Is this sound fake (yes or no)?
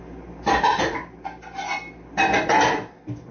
no